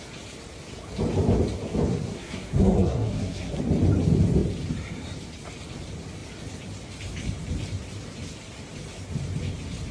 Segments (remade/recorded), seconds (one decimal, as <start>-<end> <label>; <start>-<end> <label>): 0.0-1.9 recorded; 1.9-3.6 remade; 3.6-9.9 recorded